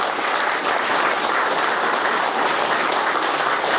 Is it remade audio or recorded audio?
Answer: recorded